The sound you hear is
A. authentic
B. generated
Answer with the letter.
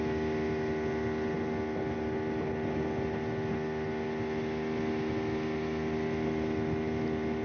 A